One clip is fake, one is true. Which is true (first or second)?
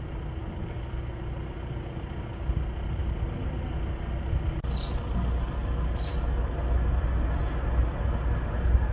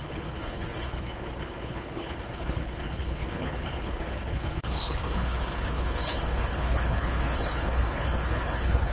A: first